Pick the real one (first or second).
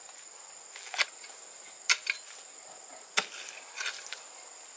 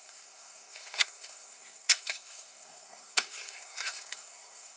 first